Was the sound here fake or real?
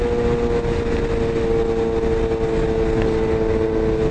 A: real